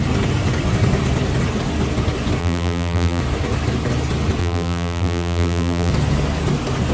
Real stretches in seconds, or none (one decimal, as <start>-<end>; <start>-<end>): 0.0-2.4; 3.2-4.4; 5.9-6.9